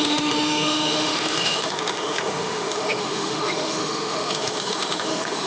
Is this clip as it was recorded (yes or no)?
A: no